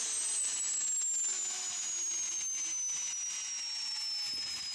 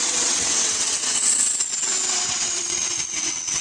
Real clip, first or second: first